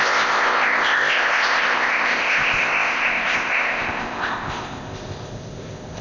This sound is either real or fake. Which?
fake